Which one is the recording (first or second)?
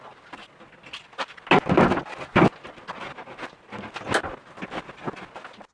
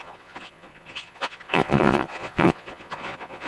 first